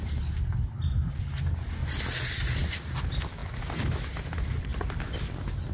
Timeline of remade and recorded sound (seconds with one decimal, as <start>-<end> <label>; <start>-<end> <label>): 0.0-1.8 recorded; 1.8-3.0 remade; 3.0-5.7 recorded